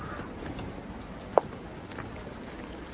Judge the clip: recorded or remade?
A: recorded